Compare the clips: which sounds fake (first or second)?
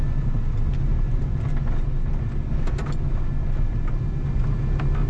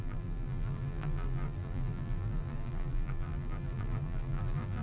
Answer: second